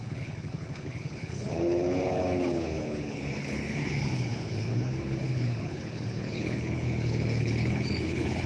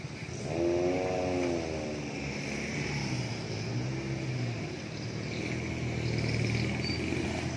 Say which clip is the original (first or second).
second